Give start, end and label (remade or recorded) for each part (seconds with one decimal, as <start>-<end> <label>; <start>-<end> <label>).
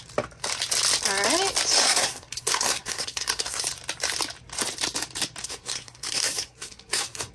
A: 0.0-1.8 recorded; 1.8-3.6 remade; 3.6-5.4 recorded; 5.4-7.3 remade